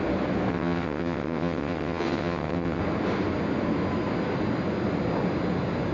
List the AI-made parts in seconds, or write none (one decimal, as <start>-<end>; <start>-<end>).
0.5-2.8